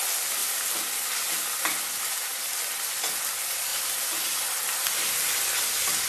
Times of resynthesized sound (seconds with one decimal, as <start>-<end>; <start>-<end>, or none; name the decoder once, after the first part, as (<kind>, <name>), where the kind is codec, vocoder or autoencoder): 0.4-3.1 (vocoder, BigVGAN v2)